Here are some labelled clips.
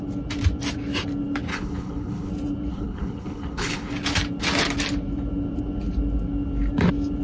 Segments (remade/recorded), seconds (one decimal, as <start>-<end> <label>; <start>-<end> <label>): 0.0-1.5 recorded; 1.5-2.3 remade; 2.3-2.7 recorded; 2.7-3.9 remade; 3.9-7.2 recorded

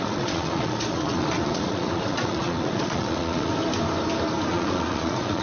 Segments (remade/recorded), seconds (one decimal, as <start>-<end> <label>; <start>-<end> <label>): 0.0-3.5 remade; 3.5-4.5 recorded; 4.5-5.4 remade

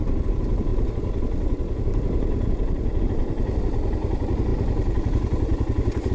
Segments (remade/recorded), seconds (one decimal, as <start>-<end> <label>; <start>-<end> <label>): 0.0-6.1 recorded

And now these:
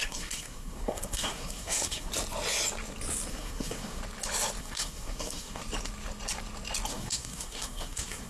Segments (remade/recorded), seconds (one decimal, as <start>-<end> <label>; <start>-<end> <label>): 0.0-2.1 remade; 2.1-3.3 recorded; 3.3-4.0 remade; 4.0-4.6 recorded; 4.6-5.6 remade; 5.6-6.9 recorded; 6.9-8.3 remade

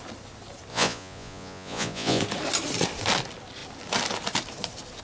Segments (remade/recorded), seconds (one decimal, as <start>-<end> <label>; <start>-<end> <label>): 0.0-0.7 recorded; 0.7-2.2 remade; 2.2-5.0 recorded